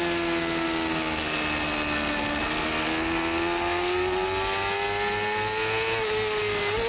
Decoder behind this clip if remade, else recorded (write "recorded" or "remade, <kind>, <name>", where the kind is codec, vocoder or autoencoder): recorded